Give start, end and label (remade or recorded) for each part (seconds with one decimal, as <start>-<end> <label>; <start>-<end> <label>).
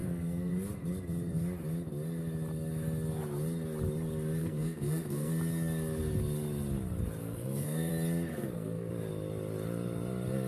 0.0-0.5 remade; 0.5-4.4 recorded; 4.4-5.3 remade; 5.3-7.2 recorded; 7.2-7.9 remade; 7.9-8.3 recorded; 8.3-8.9 remade; 8.9-10.5 recorded